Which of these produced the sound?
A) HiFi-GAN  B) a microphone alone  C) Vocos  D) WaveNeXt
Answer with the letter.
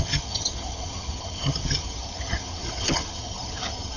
A